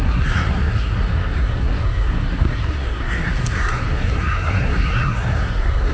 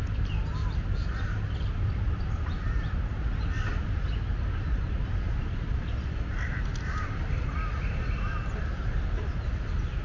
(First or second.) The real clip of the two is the second